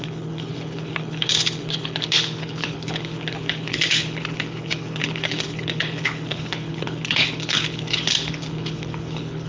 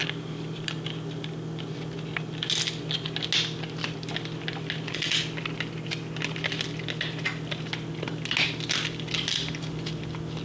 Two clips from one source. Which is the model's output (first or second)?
first